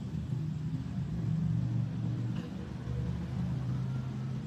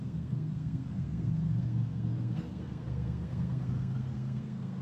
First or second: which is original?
first